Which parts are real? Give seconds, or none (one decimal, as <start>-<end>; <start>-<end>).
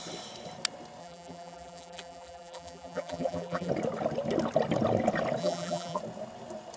0.0-1.0; 3.7-5.4; 6.0-6.8